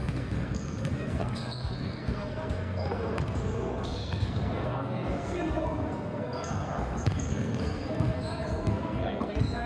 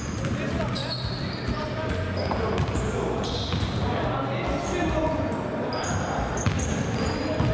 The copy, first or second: first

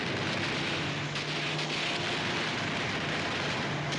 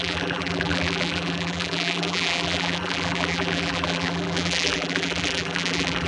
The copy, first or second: second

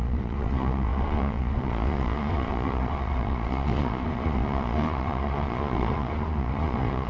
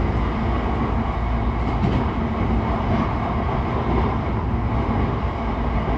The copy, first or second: first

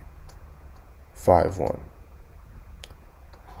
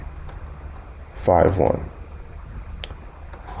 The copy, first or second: first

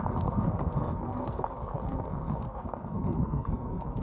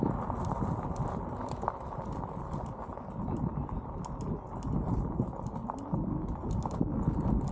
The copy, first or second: first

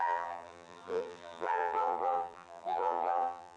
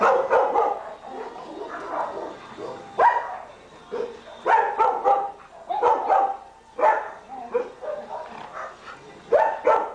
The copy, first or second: first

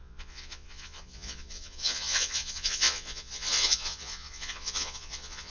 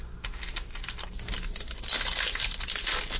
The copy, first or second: first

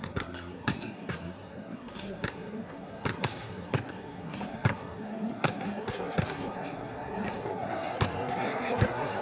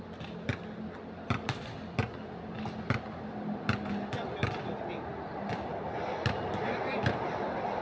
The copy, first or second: first